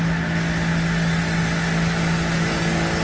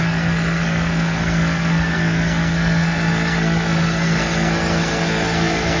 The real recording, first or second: first